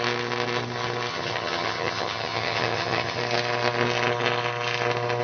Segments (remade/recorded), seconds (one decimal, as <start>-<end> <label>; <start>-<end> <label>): 0.0-1.1 recorded; 1.1-3.2 remade; 3.2-5.2 recorded